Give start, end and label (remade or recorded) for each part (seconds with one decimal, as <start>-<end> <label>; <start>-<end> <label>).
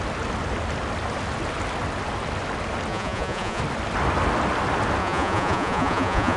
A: 0.0-2.9 recorded; 2.9-3.6 remade; 3.6-5.0 recorded; 5.0-6.4 remade